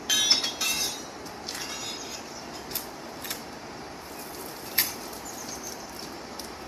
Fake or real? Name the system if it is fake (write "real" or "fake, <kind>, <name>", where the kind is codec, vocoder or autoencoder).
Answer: fake, vocoder, BigVGAN v2